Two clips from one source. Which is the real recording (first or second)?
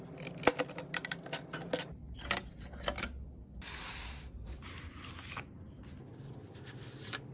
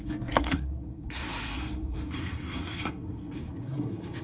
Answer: first